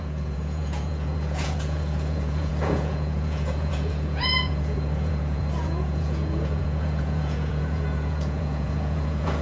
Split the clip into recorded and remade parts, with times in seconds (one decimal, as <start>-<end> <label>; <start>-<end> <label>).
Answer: 0.0-9.4 remade